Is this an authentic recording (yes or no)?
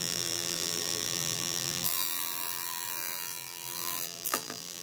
no